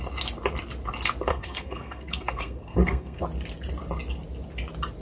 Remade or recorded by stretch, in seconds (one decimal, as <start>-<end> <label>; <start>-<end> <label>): 0.0-1.3 recorded; 1.3-3.2 remade; 3.2-5.0 recorded